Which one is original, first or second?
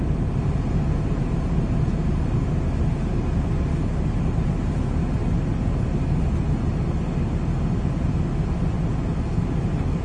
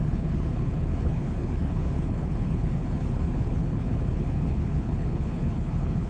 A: first